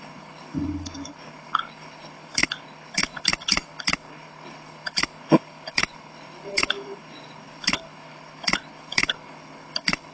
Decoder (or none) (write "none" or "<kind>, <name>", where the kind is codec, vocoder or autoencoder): codec, HILCodec